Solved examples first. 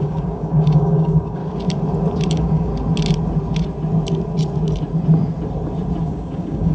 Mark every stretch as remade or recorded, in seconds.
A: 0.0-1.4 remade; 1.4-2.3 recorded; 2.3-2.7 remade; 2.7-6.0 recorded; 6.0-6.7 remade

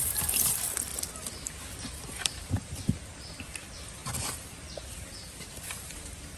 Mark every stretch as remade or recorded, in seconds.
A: 0.0-6.4 remade

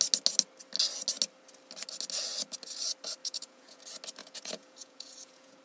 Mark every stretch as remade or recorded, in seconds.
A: 0.0-3.2 recorded; 3.2-3.8 remade; 3.8-4.2 recorded; 4.2-5.6 remade

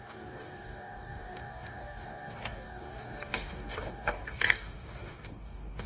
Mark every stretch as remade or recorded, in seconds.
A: 0.0-5.9 remade